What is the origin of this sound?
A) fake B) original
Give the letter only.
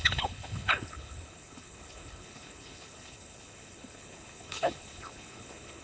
A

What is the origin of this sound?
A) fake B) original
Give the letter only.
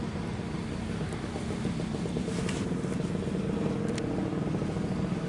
B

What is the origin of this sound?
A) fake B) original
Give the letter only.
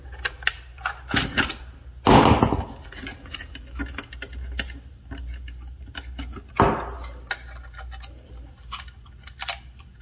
B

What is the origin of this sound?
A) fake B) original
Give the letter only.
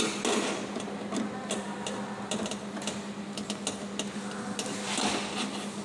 B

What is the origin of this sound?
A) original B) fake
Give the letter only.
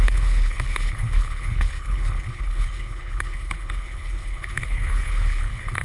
B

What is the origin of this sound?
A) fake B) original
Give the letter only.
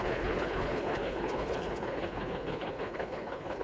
A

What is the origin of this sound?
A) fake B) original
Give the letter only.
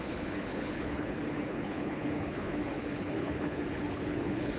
A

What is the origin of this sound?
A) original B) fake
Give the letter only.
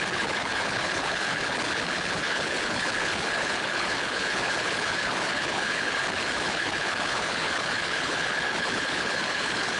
B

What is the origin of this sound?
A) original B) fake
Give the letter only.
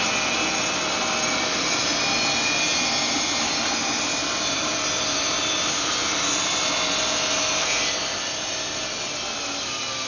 A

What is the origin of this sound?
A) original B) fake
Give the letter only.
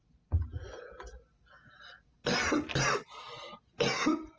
A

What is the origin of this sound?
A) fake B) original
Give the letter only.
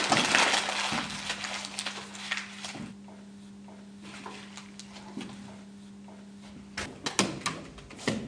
B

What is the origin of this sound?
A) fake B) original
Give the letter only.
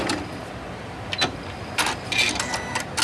B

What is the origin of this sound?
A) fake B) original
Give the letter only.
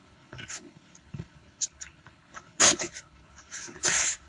A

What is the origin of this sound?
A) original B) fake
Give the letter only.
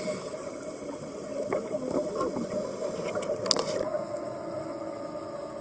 A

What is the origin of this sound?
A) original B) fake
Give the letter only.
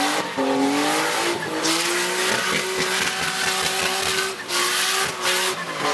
A